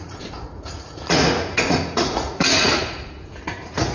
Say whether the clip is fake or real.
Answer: fake